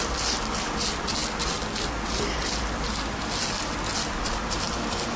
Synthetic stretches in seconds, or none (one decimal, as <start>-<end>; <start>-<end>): none